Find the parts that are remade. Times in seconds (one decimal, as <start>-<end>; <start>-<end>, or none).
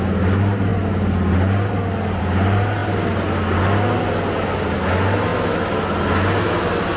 none